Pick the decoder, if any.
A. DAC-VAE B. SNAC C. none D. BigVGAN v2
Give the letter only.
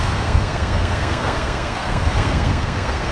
B